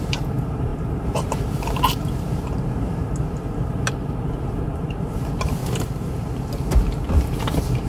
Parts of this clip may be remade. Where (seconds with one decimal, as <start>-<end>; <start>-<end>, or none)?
0.0-5.6; 7.3-7.9